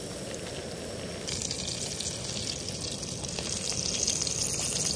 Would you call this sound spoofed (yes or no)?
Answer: no